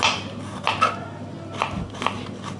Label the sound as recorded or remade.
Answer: recorded